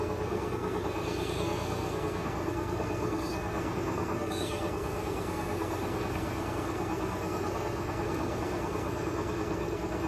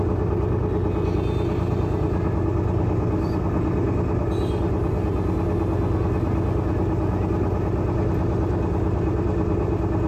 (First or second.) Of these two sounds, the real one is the second